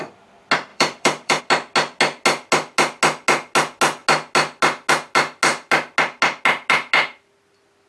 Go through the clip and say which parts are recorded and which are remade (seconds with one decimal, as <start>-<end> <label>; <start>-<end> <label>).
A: 0.0-0.7 recorded; 0.7-1.4 remade; 1.4-7.9 recorded